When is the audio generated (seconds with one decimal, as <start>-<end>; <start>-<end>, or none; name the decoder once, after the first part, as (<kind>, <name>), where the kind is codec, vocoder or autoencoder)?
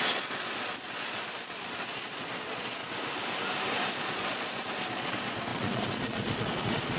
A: 0.0-2.8 (vocoder, Vocos); 3.7-7.0